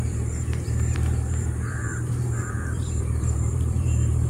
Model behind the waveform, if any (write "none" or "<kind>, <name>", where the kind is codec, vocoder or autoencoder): vocoder, BigVGAN v2